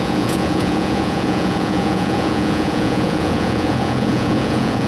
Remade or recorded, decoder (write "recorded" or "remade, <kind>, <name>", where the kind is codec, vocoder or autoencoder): remade, vocoder, Vocos